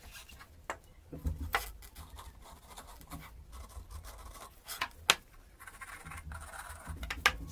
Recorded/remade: recorded